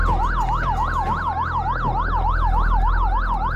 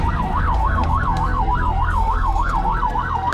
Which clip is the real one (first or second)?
first